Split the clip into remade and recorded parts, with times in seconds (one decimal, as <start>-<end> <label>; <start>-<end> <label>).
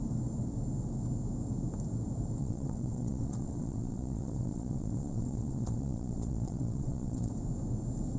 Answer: 0.0-2.4 recorded; 2.4-7.3 remade; 7.3-8.2 recorded